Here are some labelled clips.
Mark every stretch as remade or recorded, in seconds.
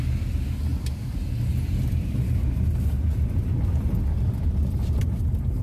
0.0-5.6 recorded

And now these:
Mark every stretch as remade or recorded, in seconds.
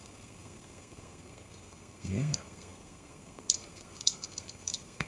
0.0-5.1 remade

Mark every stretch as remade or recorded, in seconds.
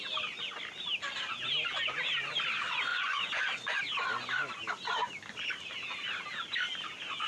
0.0-2.9 recorded; 2.9-3.8 remade; 3.8-7.3 recorded